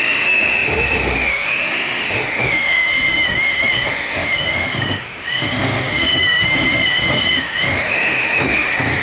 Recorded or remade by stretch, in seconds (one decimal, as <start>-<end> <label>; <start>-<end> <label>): 0.0-9.0 remade